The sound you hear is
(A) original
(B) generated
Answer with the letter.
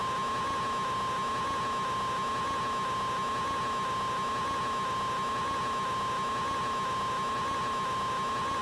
A